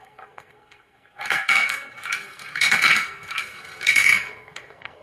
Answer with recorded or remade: remade